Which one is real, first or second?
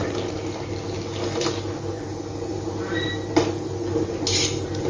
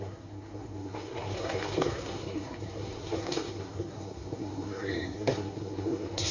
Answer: first